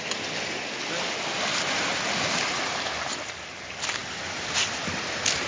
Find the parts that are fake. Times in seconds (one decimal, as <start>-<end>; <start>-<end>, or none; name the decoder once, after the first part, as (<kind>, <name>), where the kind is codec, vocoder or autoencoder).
none